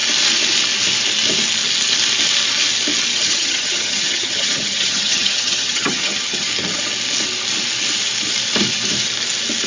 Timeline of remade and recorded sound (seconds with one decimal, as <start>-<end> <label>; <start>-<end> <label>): 0.0-3.1 recorded; 3.1-6.5 remade; 6.5-9.7 recorded